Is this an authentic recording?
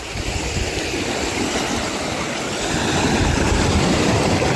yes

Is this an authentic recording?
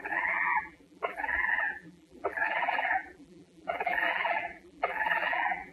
no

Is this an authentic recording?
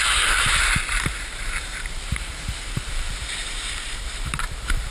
no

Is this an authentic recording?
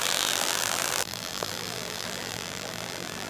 no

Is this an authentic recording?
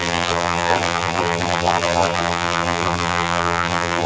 no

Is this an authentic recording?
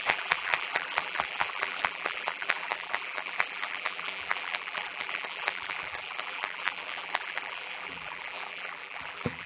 no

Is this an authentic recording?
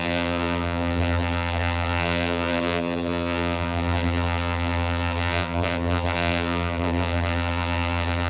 no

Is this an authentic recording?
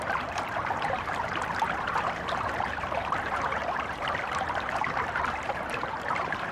no